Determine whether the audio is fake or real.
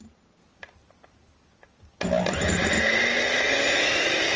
real